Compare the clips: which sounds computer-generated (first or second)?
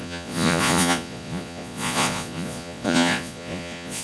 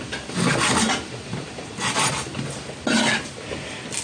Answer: first